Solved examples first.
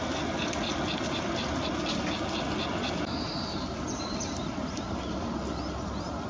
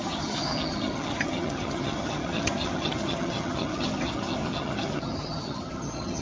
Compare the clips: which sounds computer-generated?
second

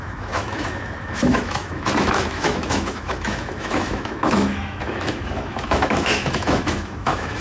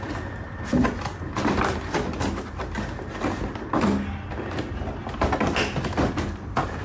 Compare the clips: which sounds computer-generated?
first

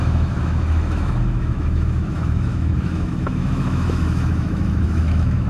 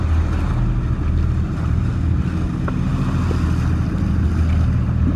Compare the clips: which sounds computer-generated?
first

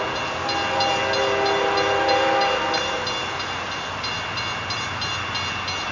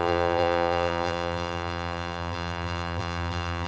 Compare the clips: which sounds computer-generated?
second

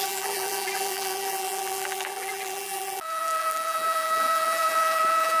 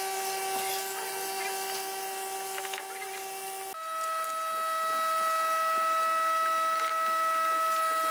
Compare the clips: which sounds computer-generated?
first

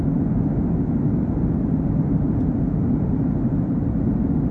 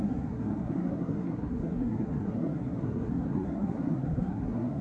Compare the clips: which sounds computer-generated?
second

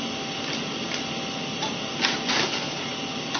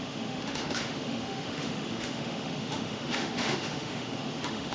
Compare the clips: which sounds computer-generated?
second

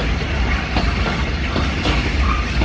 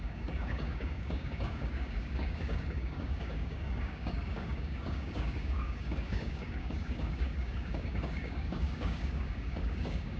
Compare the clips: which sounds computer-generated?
second